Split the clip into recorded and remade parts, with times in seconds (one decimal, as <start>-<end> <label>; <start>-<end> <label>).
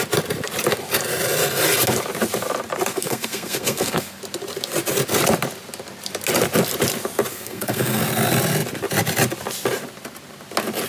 0.0-2.9 recorded; 2.9-4.2 remade; 4.2-7.3 recorded; 7.3-8.0 remade; 8.0-10.9 recorded